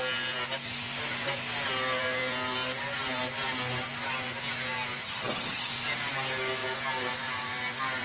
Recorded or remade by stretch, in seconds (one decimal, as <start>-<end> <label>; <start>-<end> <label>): 0.0-5.0 recorded; 5.0-5.7 remade; 5.7-8.0 recorded